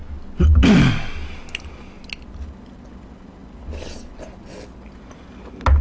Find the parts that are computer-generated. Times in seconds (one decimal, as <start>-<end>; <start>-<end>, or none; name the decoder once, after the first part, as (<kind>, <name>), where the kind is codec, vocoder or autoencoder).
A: none

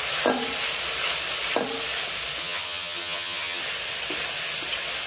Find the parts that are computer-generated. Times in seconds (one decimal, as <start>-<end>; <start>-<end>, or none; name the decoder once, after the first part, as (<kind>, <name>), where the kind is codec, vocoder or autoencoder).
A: 2.4-3.6 (vocoder, HiFi-GAN)

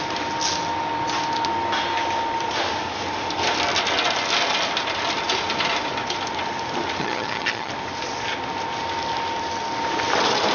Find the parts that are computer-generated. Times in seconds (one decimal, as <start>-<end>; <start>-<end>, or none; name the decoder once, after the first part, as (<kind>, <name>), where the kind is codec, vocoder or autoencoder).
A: 7.0-7.7 (vocoder, HiFi-GAN)

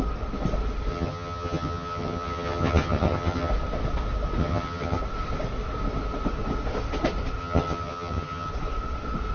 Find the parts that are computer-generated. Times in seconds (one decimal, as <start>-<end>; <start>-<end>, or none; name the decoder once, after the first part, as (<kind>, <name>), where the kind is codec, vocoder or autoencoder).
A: 0.9-3.5 (vocoder, HiFi-GAN); 4.4-5.0; 7.4-8.5

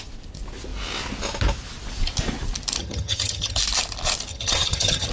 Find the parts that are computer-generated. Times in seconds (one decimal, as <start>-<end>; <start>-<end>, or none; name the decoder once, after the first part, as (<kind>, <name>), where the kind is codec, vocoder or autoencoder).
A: 2.8-3.6 (vocoder, HiFi-GAN); 4.3-5.1

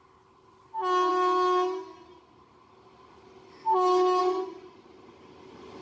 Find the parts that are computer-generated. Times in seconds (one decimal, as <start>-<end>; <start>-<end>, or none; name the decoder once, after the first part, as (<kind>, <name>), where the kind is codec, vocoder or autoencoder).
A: none

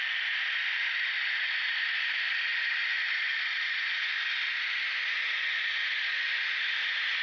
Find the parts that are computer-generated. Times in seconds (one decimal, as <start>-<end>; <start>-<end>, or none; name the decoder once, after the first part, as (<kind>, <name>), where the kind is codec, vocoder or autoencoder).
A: none

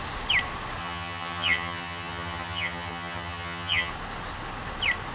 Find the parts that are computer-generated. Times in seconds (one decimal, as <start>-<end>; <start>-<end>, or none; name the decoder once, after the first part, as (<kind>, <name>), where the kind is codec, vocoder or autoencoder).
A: 0.8-3.9 (vocoder, HiFi-GAN)